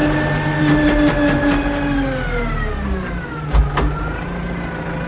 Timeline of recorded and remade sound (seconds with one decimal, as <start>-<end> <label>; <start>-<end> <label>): 0.0-5.1 recorded

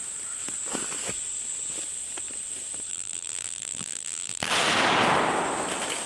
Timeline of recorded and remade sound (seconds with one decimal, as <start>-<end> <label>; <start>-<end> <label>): 0.0-2.9 recorded; 2.9-4.5 remade; 4.5-6.1 recorded

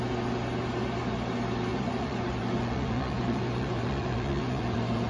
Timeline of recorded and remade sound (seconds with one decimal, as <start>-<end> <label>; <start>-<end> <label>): 0.0-1.7 recorded; 1.7-5.1 remade